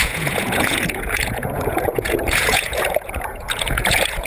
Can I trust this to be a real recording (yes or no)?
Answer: no